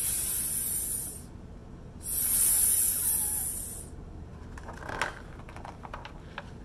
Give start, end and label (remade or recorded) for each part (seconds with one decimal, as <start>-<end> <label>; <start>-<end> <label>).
0.0-6.6 recorded